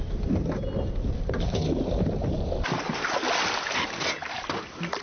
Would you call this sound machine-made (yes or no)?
no